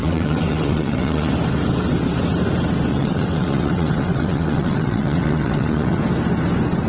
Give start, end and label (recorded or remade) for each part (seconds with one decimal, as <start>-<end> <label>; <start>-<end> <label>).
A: 0.0-1.3 remade; 1.3-2.9 recorded; 2.9-6.0 remade; 6.0-6.9 recorded